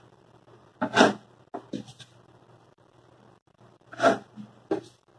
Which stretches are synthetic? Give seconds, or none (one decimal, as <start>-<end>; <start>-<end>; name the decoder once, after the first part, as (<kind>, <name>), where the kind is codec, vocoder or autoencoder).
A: 0.0-0.7 (vocoder, BigVGAN v2); 2.0-5.2